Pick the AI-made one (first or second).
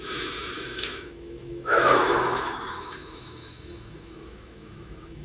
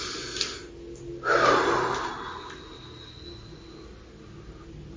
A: first